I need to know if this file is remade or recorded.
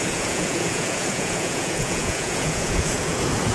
remade